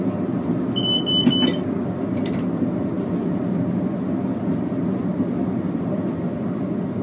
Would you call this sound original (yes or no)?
yes